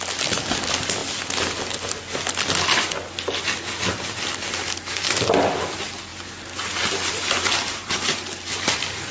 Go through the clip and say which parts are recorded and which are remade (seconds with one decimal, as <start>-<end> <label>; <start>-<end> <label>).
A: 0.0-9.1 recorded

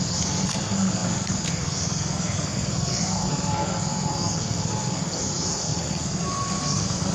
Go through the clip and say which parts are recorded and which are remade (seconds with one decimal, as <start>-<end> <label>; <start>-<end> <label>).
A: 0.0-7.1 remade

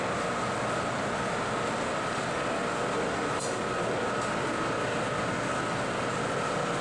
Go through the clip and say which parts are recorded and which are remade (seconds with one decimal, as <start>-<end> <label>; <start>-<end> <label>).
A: 0.0-6.8 recorded